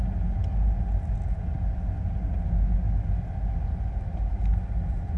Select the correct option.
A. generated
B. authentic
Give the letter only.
B